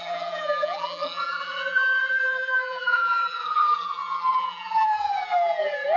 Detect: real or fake fake